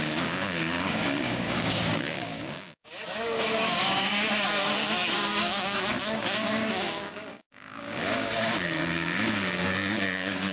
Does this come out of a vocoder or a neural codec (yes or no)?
yes